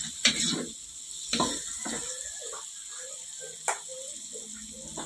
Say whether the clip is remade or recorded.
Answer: recorded